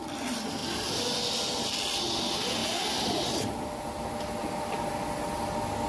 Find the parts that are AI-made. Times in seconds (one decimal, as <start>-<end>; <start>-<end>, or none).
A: none